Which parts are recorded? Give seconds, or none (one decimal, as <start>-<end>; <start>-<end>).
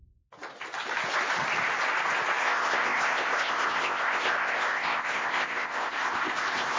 0.0-2.4